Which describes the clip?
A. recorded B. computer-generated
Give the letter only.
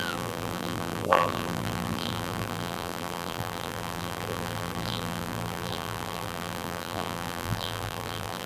B